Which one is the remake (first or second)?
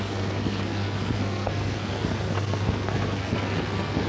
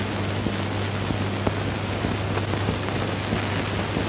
first